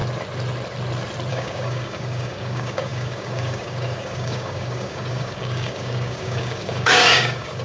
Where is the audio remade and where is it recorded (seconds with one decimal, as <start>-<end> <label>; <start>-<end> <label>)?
0.0-1.3 recorded; 1.3-7.6 remade